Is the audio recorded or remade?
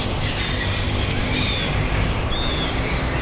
recorded